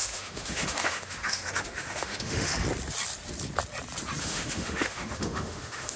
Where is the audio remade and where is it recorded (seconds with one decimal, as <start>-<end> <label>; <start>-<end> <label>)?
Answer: 0.0-2.5 remade; 2.5-4.2 recorded; 4.2-6.0 remade